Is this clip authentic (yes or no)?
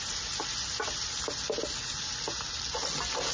yes